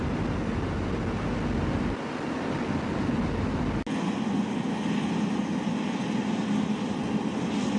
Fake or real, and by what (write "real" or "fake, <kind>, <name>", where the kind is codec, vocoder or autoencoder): real